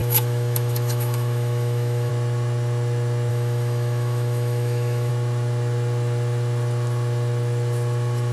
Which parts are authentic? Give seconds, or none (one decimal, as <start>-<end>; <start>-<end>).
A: 2.1-3.3; 5.1-8.3